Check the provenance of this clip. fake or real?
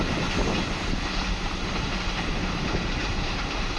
real